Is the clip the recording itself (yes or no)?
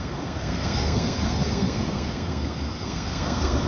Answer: no